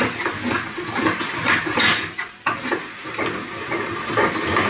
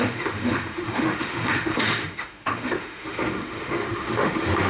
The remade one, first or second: second